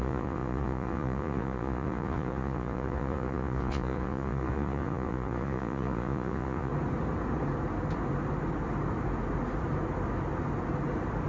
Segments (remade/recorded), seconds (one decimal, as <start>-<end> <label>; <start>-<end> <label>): 0.0-6.7 remade; 6.7-11.3 recorded